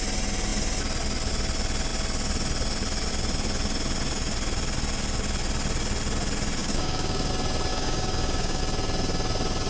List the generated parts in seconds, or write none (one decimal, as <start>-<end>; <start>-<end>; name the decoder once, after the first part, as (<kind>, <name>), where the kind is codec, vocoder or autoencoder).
6.6-7.3 (codec, DAC); 7.7-8.6